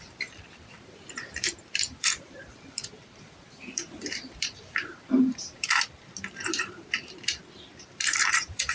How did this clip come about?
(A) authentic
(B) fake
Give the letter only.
B